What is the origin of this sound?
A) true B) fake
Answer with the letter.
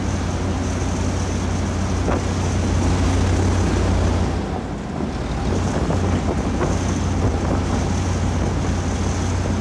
A